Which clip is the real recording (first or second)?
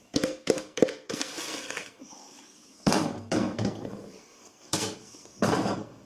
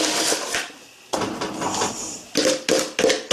second